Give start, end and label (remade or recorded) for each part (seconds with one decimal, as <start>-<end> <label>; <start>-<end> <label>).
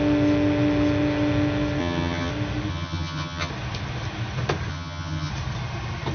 0.0-1.8 recorded; 1.8-2.3 remade; 2.3-2.7 recorded; 2.7-3.5 remade; 3.5-4.7 recorded; 4.7-5.3 remade; 5.3-6.1 recorded